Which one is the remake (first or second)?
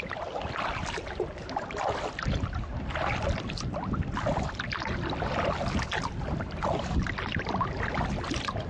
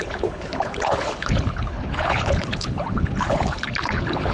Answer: second